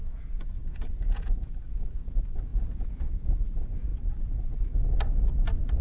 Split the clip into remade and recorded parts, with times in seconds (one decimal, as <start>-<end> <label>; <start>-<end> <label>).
0.0-3.9 remade; 3.9-5.8 recorded